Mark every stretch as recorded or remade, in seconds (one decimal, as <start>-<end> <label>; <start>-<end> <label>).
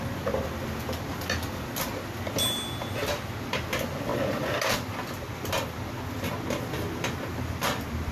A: 0.0-8.1 recorded